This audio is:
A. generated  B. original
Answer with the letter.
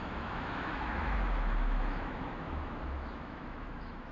A